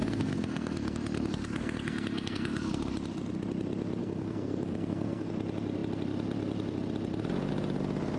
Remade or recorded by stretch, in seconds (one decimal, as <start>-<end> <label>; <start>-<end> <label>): 0.0-2.9 remade; 2.9-4.0 recorded; 4.0-5.3 remade; 5.3-8.2 recorded